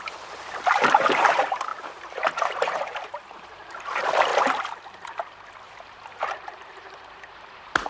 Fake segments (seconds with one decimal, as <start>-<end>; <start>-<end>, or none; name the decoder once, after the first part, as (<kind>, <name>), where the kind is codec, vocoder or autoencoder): 0.0-4.3 (vocoder, BigVGAN v2); 6.2-7.9